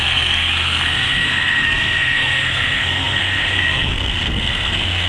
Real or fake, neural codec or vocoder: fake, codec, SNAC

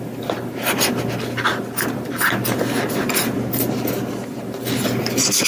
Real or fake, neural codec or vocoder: real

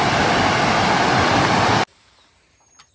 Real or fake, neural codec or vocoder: real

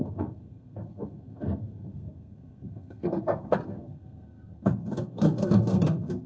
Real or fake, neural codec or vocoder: fake, codec, SNAC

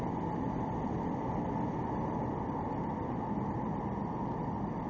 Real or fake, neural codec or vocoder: real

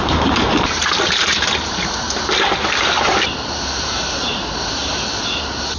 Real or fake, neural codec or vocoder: fake, vocoder, BigVGAN v2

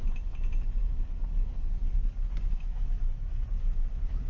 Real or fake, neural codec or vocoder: real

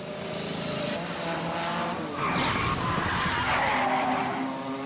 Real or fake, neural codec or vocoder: real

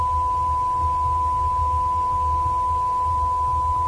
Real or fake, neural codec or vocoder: real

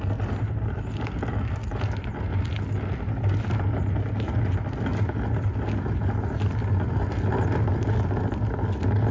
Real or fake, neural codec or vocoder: real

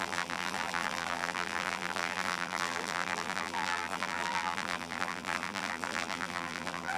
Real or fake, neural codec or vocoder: fake, vocoder, BigVGAN v2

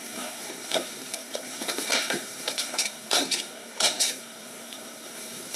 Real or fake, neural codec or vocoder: fake, codec, SNAC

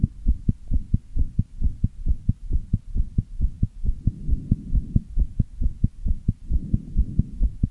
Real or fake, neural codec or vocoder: real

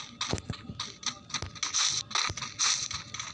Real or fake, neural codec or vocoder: real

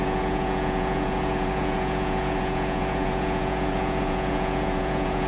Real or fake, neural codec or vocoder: fake, vocoder, Vocos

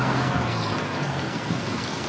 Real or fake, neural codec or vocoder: fake, codec, SNAC